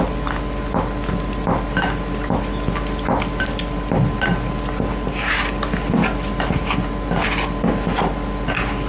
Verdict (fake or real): real